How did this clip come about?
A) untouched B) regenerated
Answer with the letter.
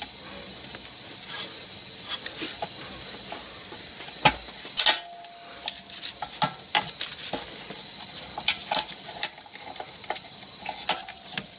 A